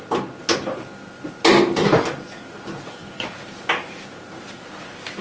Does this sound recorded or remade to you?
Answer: recorded